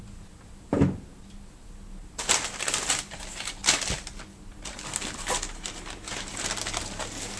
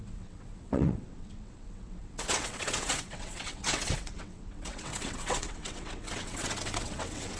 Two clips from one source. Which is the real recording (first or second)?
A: first